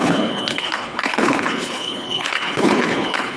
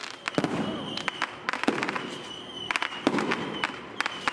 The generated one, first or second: first